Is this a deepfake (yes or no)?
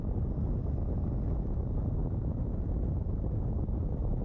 no